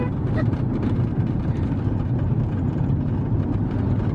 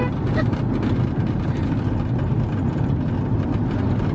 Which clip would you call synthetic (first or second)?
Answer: first